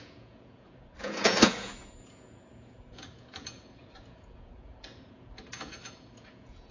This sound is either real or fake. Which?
fake